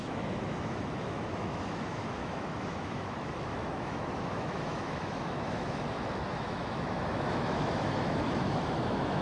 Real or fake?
fake